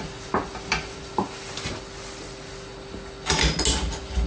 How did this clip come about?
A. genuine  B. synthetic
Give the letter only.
A